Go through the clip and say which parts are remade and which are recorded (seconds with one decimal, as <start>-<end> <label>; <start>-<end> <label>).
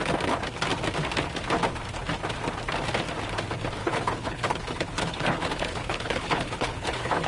0.0-3.8 recorded; 3.8-7.3 remade